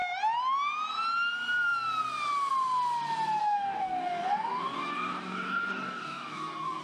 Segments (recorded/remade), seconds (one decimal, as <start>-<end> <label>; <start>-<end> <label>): 0.0-3.4 recorded; 3.4-6.8 remade